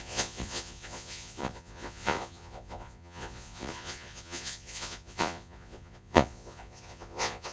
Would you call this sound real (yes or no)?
no